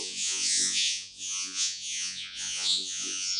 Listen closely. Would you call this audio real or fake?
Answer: fake